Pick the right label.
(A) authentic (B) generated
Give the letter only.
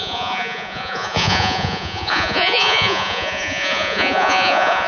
B